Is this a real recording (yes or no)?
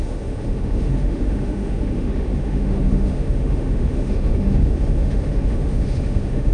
no